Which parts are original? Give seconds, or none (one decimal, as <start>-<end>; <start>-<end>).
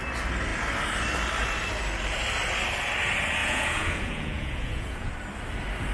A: 0.0-3.4; 5.1-5.9